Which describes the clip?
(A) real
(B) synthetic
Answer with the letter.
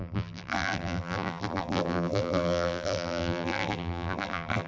B